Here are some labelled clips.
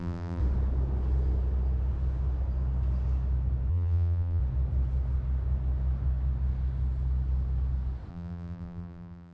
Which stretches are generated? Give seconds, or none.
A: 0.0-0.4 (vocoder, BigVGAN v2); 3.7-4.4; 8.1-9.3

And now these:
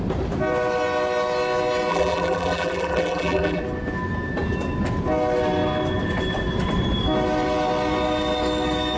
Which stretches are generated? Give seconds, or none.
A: 1.9-3.6 (vocoder, BigVGAN v2)

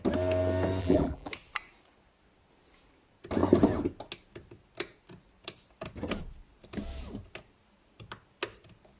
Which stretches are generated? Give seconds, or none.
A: 0.8-1.3 (vocoder, BigVGAN v2)

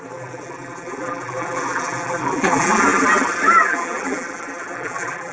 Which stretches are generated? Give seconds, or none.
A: 0.0-5.3 (vocoder, BigVGAN v2)

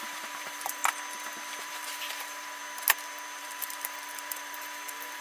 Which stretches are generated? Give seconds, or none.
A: 0.0-0.8 (vocoder, BigVGAN v2); 1.6-2.6; 3.4-5.2

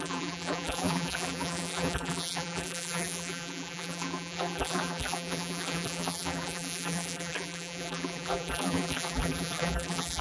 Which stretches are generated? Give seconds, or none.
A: 0.0-10.2 (vocoder, BigVGAN v2)

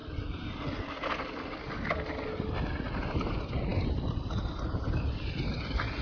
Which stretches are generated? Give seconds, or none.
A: none